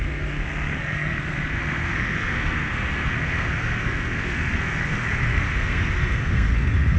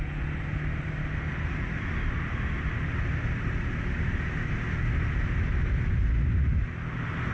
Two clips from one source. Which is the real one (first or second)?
second